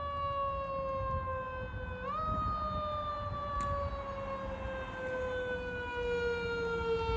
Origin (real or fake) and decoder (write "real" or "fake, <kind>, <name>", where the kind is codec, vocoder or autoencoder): real